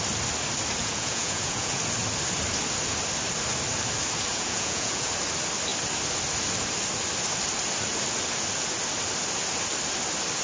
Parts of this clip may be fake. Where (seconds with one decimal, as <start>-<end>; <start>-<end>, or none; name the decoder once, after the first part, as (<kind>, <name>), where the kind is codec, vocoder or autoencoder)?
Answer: 0.8-1.8 (vocoder, Vocos); 4.3-5.1